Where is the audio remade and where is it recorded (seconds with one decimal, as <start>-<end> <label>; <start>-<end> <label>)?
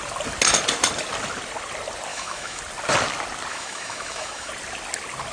0.0-2.1 recorded; 2.1-2.6 remade; 2.6-3.5 recorded; 3.5-4.5 remade; 4.5-5.3 recorded